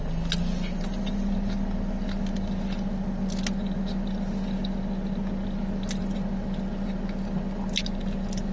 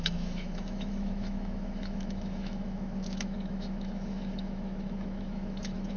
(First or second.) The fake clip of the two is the second